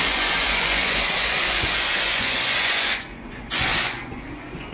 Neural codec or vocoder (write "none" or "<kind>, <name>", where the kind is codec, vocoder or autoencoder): vocoder, Vocos